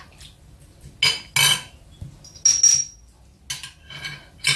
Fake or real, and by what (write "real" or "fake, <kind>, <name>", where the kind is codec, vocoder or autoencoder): real